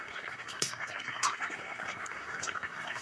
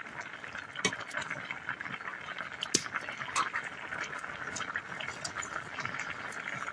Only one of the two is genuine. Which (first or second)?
second